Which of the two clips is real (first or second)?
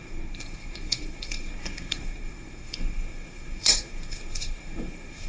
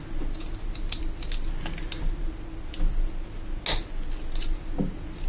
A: second